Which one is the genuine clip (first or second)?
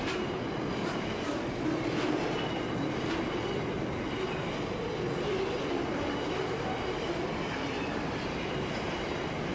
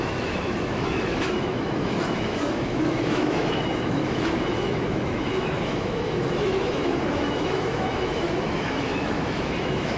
first